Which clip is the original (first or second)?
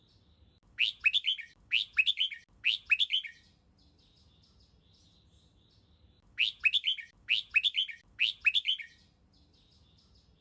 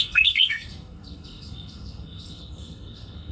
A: first